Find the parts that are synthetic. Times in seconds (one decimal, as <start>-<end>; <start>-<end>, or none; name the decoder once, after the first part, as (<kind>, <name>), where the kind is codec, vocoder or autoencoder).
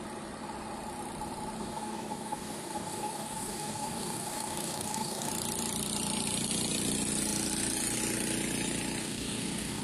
1.6-5.3 (codec, DAC); 9.0-9.8